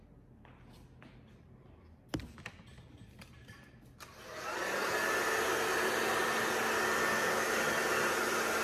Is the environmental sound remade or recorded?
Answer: recorded